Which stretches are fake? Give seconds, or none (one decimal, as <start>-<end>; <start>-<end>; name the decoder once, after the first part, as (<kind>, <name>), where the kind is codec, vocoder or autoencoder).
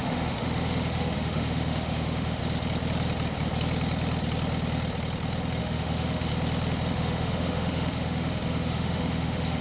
0.0-2.4 (autoencoder, DAC-VAE); 5.6-6.3; 6.9-9.6